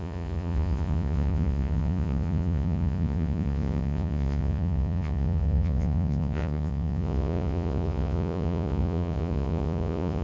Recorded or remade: remade